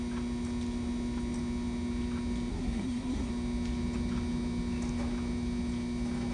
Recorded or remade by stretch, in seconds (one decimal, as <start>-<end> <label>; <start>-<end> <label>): 0.0-2.5 recorded; 2.5-3.3 remade; 3.3-6.3 recorded